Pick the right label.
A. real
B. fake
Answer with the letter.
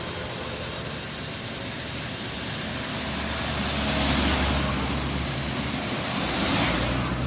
A